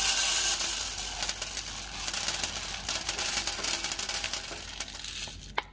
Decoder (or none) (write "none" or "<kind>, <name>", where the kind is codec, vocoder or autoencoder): none